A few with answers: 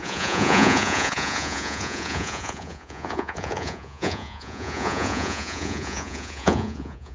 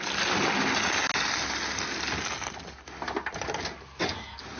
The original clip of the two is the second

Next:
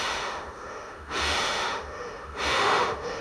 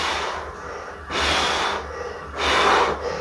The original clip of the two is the second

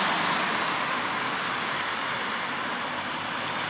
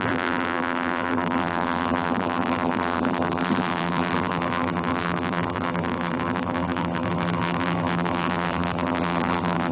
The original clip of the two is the first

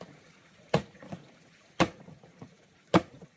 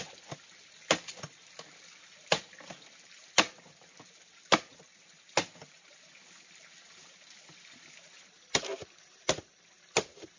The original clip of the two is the second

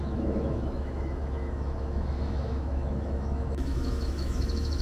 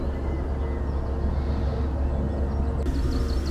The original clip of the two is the second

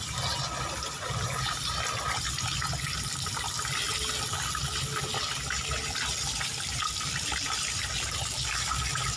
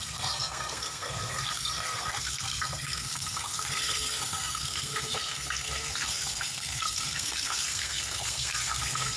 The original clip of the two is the first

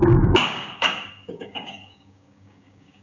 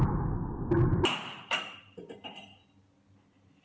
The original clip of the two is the second